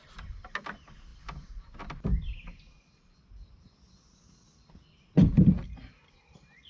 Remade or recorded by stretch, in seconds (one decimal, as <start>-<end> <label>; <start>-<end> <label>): 0.0-6.7 recorded